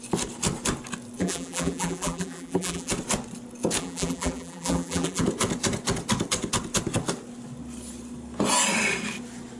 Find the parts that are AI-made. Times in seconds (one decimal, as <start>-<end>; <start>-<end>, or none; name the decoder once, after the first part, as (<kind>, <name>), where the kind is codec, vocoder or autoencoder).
1.2-2.9 (vocoder, BigVGAN v2); 3.8-5.2